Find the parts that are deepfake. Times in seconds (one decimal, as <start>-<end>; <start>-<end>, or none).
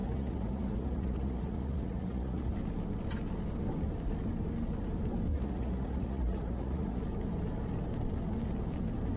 0.0-2.5; 5.3-7.0